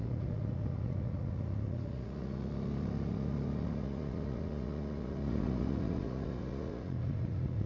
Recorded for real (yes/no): no